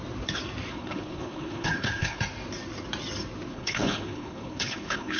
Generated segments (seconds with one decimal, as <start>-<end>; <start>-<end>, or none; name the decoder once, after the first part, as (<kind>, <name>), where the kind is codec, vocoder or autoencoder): 0.7-2.2 (codec, HILCodec); 3.5-5.2